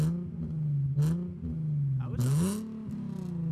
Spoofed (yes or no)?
no